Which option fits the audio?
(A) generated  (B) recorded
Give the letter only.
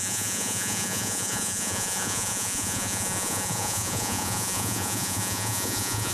A